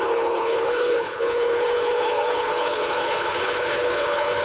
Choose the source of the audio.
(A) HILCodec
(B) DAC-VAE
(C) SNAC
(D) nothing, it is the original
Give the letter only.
A